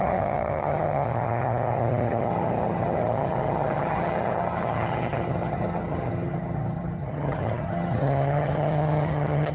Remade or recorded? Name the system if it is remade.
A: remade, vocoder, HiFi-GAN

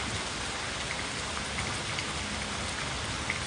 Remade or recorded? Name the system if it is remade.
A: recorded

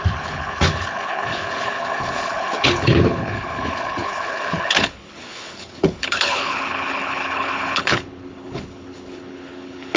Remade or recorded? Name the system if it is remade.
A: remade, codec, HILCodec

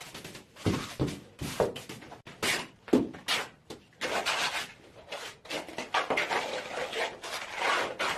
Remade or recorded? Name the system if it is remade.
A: recorded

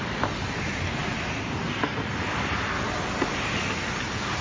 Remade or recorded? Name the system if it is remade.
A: recorded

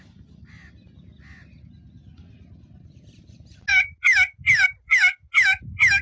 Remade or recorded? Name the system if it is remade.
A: recorded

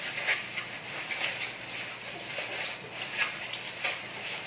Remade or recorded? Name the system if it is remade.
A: recorded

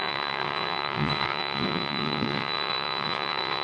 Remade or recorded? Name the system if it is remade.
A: remade, vocoder, WaveNeXt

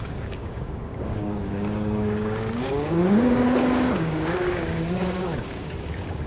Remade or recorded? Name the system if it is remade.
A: remade, codec, DAC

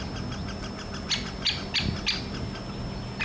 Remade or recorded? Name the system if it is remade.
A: recorded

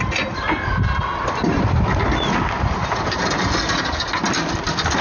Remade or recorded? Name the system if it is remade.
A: recorded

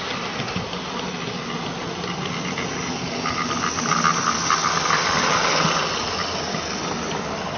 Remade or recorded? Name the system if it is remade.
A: recorded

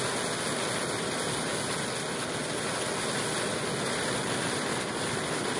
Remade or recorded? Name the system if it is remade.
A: recorded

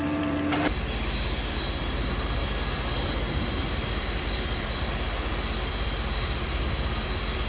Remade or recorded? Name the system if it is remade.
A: remade, vocoder, BigVGAN v2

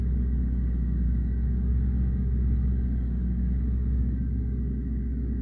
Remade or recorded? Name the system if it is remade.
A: remade, codec, DAC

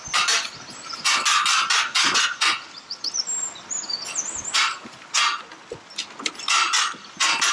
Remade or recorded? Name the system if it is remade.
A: recorded